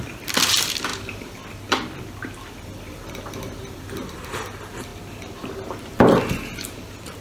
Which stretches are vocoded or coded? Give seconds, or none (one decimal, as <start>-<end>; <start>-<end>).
0.0-4.9